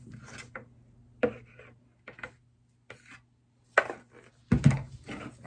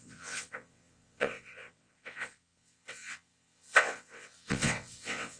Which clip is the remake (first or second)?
second